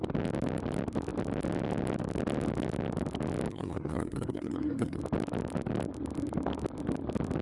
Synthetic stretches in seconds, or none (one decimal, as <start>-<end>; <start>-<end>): 3.5-5.0